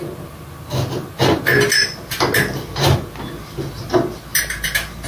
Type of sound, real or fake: real